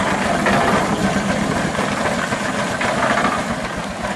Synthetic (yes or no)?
no